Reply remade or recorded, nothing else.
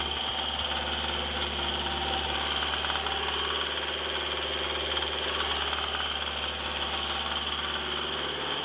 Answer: recorded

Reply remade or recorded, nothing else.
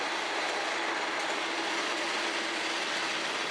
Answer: recorded